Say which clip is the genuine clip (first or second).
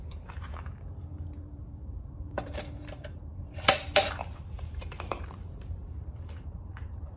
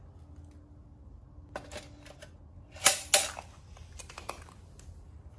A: second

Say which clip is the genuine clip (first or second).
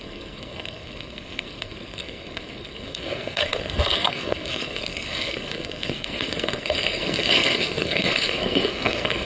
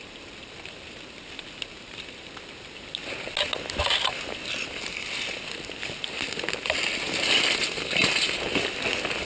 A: second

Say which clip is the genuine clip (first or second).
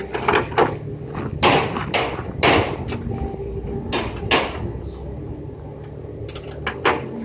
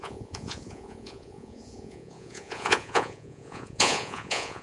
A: first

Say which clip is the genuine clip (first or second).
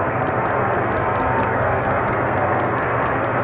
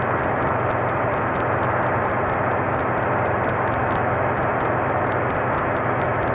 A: second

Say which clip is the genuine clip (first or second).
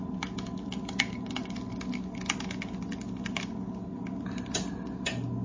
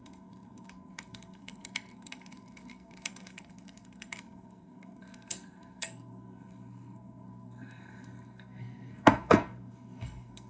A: first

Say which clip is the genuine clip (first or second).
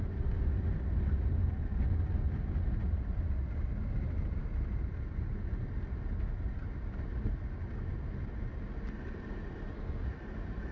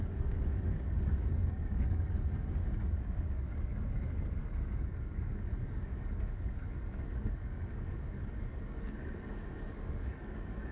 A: first